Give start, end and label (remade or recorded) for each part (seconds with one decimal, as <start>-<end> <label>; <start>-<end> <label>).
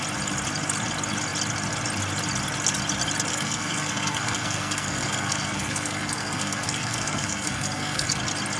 0.0-3.3 recorded; 3.3-8.2 remade; 8.2-8.6 recorded